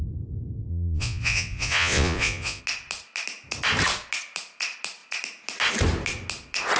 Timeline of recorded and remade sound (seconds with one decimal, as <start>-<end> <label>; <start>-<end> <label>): 0.0-0.7 recorded; 0.7-2.6 remade; 2.6-6.8 recorded